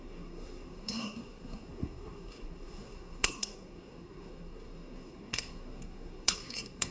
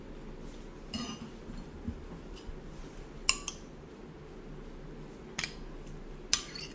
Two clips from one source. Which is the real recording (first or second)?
second